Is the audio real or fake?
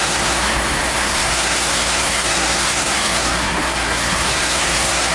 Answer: fake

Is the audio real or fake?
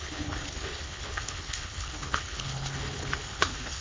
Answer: fake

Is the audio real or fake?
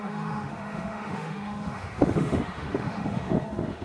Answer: fake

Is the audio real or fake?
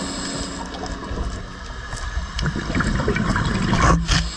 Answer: real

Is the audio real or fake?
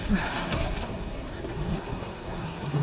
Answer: fake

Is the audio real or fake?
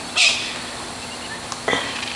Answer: real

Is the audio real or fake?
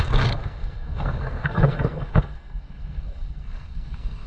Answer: fake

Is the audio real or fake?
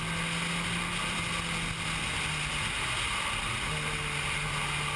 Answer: real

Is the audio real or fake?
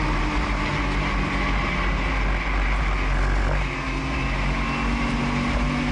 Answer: real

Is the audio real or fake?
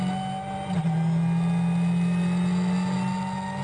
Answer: real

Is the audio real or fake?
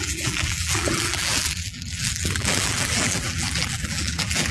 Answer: fake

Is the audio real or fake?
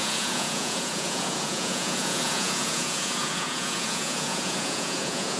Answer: fake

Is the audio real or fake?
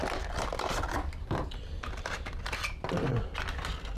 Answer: real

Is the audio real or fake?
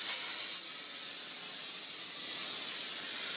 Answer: real